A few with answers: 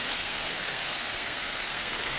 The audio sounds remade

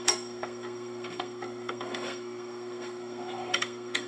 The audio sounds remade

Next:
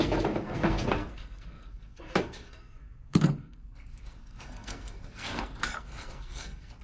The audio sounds remade